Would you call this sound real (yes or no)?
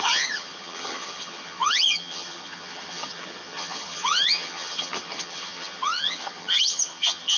no